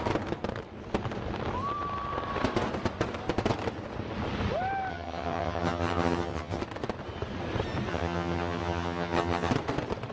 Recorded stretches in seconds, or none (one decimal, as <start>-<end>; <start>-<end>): 0.0-4.9; 6.6-7.9; 9.5-10.1